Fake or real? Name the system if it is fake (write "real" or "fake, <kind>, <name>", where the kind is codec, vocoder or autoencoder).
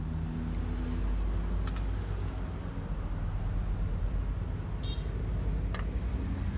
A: real